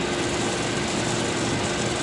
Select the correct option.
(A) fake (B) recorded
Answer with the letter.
B